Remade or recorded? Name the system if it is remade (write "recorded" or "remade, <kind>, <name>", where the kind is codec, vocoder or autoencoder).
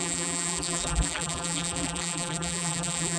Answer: remade, vocoder, BigVGAN v2